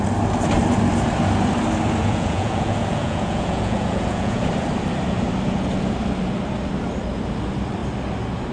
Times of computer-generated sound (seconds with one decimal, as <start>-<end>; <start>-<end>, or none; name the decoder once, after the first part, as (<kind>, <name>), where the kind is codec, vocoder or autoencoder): 2.0-4.5 (vocoder, Vocos)